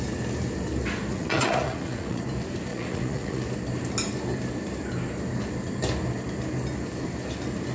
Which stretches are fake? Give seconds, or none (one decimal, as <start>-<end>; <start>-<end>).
1.1-2.2; 2.7-3.4